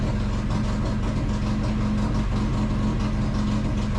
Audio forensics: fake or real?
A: real